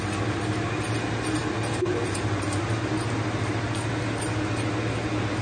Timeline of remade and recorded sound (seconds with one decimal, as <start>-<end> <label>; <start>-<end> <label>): 0.0-5.4 recorded